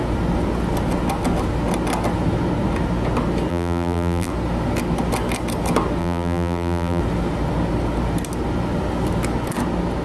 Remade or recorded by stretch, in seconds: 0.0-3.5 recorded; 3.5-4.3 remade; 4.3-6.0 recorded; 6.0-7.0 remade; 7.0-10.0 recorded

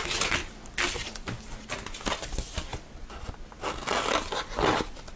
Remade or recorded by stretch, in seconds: 0.0-2.7 recorded; 2.7-4.5 remade; 4.5-5.2 recorded

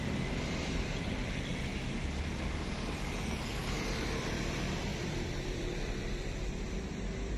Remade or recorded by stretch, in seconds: 0.0-1.7 remade; 1.7-2.7 recorded; 2.7-3.6 remade; 3.6-4.3 recorded; 4.3-7.4 remade

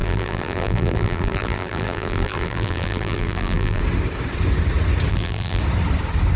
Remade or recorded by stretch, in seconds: 0.0-3.8 remade; 3.8-5.1 recorded; 5.1-5.6 remade; 5.6-6.4 recorded